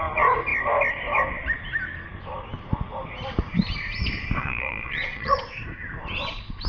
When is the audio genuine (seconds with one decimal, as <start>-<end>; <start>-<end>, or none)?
0.0-4.4; 5.4-6.7